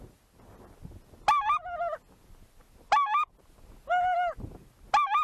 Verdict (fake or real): real